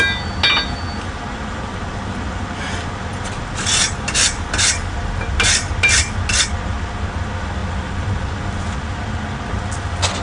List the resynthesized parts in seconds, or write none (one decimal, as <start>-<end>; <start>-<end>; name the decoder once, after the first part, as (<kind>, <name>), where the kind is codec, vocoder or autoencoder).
none